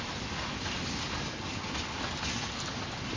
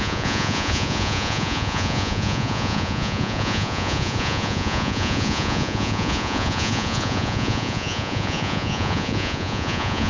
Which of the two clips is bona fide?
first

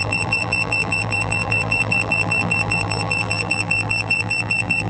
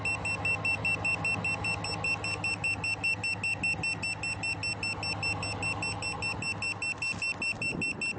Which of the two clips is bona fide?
second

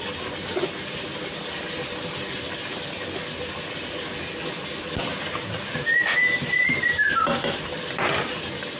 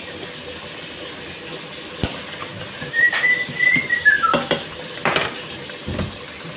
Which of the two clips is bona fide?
first